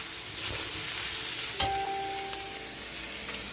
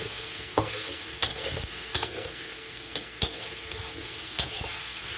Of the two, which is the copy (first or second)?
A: second